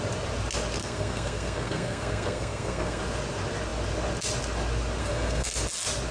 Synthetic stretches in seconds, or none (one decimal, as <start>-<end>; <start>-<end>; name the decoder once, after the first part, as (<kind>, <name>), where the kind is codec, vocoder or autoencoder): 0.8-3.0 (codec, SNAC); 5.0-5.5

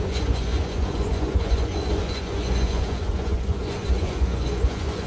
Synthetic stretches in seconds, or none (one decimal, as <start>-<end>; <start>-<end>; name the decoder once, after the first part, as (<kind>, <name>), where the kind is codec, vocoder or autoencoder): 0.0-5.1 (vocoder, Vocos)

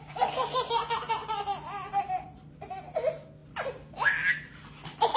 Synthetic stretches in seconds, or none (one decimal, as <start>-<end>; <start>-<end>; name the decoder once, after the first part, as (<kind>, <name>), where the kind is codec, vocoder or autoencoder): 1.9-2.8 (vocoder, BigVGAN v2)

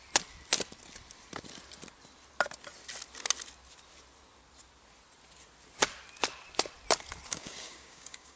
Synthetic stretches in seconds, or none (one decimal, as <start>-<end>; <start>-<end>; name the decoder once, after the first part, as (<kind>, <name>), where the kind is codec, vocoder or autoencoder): 7.3-8.4 (codec, DAC)

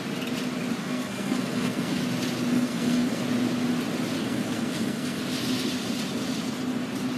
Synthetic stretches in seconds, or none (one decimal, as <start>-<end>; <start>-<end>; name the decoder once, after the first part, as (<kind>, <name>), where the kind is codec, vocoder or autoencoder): 0.8-2.0 (codec, SNAC); 2.5-3.2; 4.2-5.2

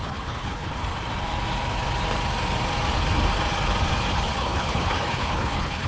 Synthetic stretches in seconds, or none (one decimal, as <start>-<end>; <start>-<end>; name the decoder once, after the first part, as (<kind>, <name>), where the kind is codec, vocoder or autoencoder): 0.0-0.8 (codec, HILCodec); 4.1-5.9

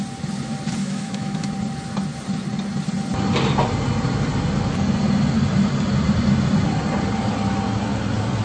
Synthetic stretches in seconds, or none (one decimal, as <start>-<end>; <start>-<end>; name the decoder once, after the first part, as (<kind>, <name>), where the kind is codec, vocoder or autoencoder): 0.8-1.5 (autoencoder, DAC-VAE)

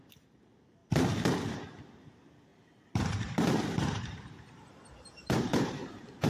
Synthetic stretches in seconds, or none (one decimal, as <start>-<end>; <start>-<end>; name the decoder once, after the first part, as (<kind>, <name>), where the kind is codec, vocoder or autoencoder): 0.0-0.8 (vocoder, BigVGAN v2); 2.0-6.3